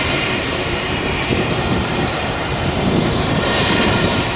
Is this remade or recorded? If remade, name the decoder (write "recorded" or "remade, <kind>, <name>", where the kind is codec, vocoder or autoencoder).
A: remade, vocoder, BigVGAN v2